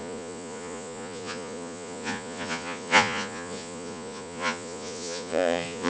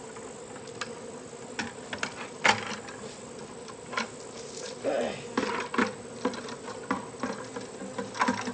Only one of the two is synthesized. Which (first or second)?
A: first